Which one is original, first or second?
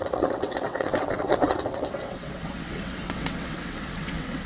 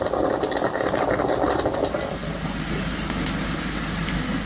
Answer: second